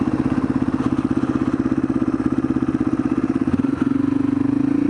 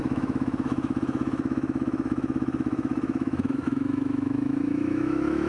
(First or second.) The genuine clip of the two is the first